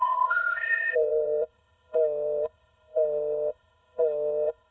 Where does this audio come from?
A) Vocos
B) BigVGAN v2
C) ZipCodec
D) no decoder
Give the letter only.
C